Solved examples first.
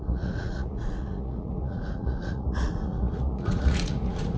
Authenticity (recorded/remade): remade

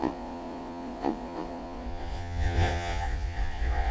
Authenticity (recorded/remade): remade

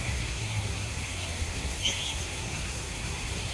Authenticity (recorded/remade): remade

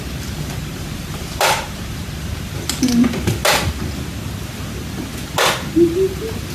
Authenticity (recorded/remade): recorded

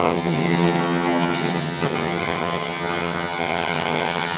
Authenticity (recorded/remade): remade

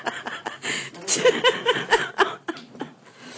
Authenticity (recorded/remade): recorded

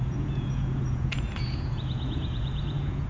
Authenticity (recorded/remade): remade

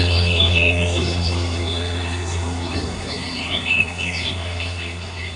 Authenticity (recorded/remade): remade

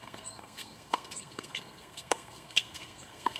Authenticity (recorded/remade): remade